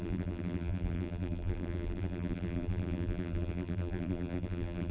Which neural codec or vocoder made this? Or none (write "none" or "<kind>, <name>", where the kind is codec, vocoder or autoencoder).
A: vocoder, BigVGAN v2